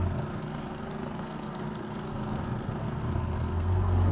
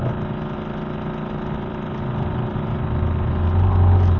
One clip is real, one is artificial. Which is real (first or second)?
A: second